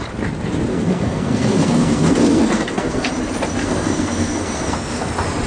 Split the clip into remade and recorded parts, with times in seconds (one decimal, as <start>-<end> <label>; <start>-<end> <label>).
0.0-0.7 recorded; 0.7-3.1 remade; 3.1-3.6 recorded; 3.6-5.1 remade; 5.1-5.5 recorded